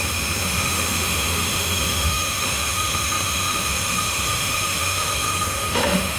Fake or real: fake